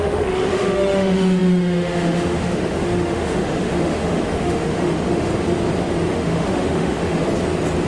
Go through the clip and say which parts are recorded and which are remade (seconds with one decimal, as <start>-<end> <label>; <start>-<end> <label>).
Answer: 0.0-5.3 remade; 5.3-6.1 recorded; 6.1-7.2 remade; 7.2-7.9 recorded